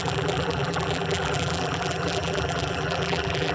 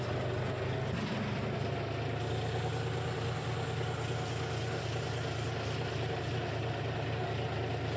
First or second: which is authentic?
second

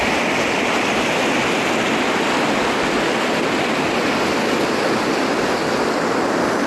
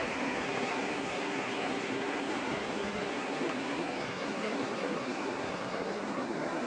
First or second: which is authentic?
first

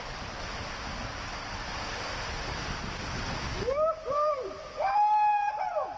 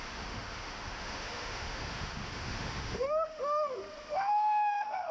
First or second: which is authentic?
first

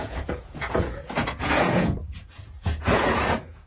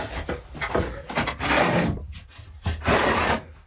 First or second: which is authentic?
second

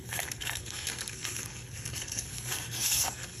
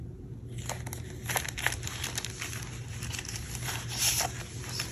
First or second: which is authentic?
second